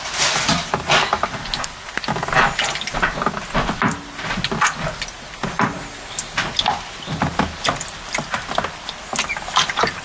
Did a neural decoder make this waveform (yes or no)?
no